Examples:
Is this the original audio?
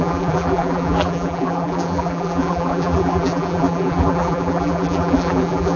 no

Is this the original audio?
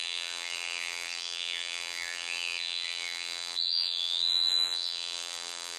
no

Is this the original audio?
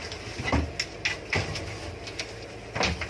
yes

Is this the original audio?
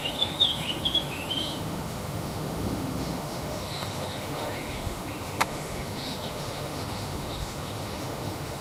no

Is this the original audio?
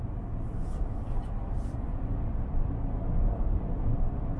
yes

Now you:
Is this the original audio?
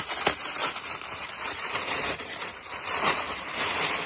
no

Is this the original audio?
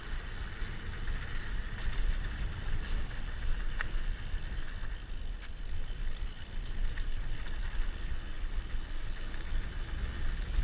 yes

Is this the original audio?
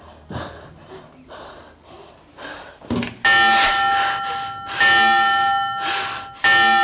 yes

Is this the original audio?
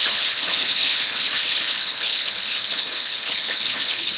no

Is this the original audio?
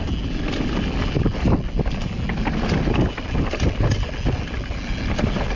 yes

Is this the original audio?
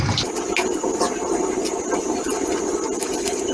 yes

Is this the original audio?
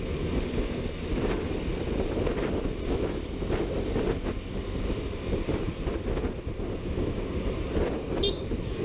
yes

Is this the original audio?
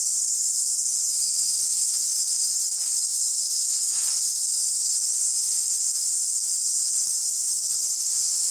no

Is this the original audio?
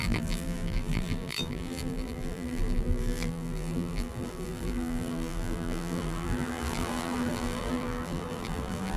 no